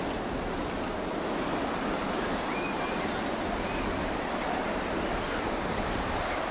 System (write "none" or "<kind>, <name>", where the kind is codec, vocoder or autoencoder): none